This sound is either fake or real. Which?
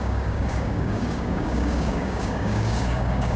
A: fake